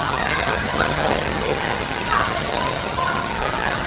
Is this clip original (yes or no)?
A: no